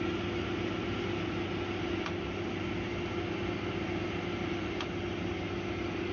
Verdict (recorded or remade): recorded